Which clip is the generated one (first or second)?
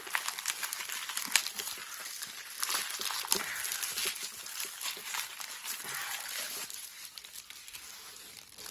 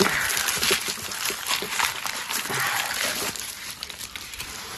second